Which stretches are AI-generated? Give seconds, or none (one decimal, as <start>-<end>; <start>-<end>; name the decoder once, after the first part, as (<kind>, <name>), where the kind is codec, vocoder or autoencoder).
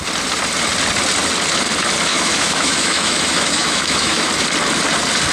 2.1-4.3 (autoencoder, DAC-VAE)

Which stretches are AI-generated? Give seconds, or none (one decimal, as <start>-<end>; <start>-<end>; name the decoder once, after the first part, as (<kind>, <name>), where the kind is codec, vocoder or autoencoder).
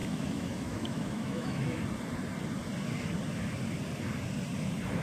0.0-1.8 (autoencoder, DAC-VAE)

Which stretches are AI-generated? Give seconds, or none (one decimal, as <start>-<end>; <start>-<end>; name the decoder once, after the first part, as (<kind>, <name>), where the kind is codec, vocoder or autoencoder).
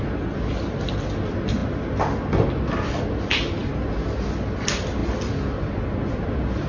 none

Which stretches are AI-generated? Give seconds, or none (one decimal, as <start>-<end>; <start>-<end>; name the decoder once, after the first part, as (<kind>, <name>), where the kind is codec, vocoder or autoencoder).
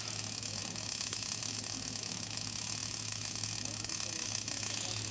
0.0-5.1 (autoencoder, DAC-VAE)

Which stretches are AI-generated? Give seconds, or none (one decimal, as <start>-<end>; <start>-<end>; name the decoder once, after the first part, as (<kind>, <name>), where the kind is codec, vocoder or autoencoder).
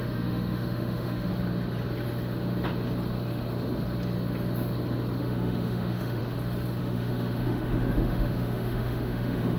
0.0-1.3 (autoencoder, DAC-VAE); 5.2-6.2; 6.8-9.6